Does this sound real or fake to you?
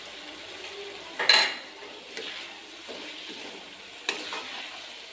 real